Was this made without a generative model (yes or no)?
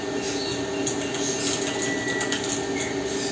yes